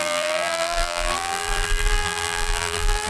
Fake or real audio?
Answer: fake